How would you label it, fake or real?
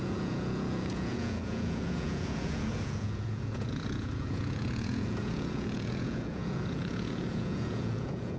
fake